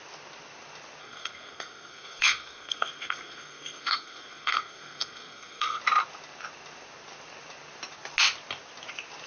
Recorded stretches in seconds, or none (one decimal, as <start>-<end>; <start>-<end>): 0.0-1.0; 5.8-9.3